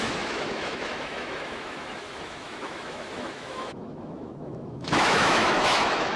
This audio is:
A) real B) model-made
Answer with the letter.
B